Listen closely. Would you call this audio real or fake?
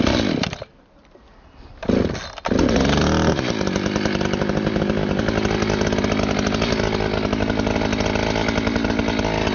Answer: real